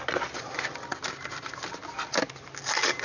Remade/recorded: recorded